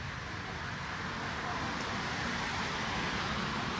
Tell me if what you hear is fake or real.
real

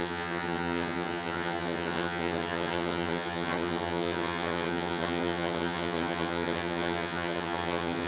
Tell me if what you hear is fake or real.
fake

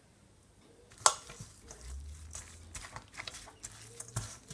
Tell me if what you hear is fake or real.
real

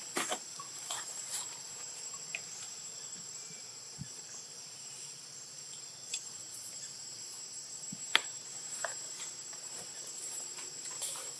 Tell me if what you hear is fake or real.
fake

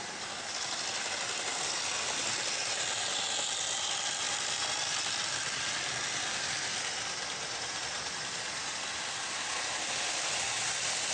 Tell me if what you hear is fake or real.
real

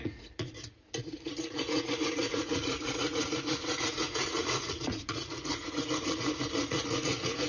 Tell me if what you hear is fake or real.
fake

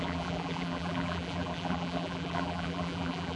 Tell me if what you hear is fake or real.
fake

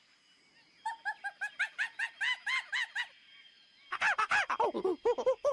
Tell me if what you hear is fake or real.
real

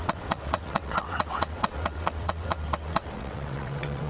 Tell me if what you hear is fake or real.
fake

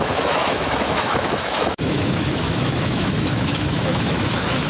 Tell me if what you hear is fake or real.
fake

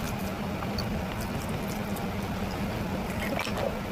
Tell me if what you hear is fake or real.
real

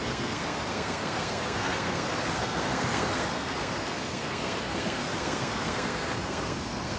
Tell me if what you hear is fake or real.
fake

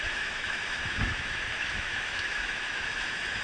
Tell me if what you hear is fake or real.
fake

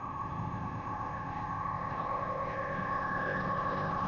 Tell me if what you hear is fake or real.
fake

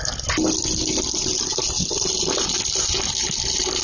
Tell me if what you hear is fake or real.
real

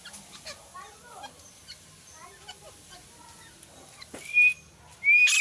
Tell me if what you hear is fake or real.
real